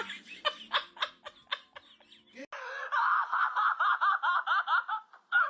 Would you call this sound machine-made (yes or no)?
no